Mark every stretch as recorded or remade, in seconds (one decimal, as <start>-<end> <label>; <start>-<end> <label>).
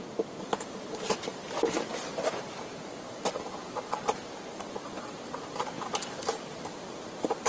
0.0-7.5 remade